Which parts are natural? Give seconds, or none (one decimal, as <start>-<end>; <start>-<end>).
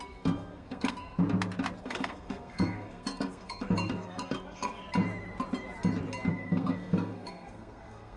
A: 1.2-1.8; 4.8-6.3